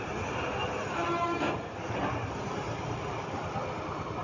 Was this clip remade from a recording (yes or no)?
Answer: no